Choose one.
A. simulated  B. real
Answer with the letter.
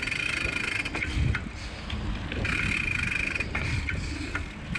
A